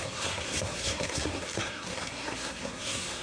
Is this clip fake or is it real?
fake